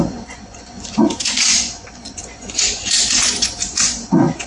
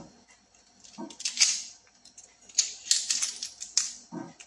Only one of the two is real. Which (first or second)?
second